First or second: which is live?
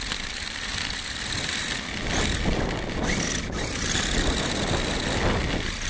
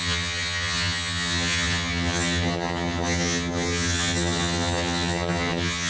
first